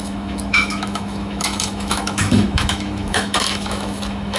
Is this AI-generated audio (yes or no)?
yes